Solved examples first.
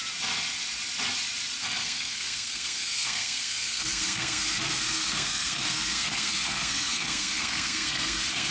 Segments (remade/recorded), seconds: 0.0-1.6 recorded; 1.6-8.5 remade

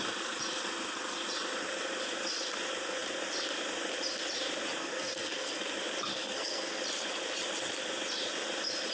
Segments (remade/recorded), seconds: 0.0-4.8 recorded; 4.8-5.6 remade; 5.6-6.1 recorded; 6.1-6.8 remade; 6.8-8.9 recorded

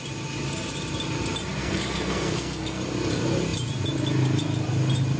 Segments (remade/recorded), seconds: 0.0-1.6 recorded; 1.6-2.8 remade; 2.8-5.2 recorded

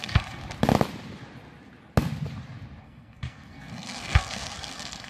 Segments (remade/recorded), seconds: 0.0-0.4 remade; 0.4-2.8 recorded; 2.8-5.1 remade

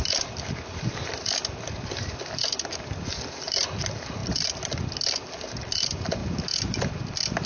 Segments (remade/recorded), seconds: 0.0-7.5 recorded

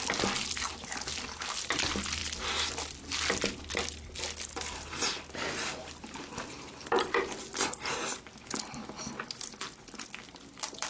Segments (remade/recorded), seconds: 0.0-10.9 recorded

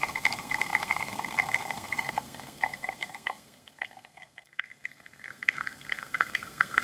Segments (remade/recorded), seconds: 0.0-6.8 remade

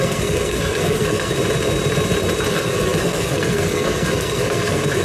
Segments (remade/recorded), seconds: 0.0-1.3 remade; 1.3-2.5 recorded; 2.5-5.0 remade